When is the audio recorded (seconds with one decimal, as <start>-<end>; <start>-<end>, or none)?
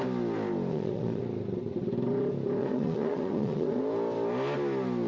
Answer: 0.0-0.7; 1.2-2.6; 3.8-5.1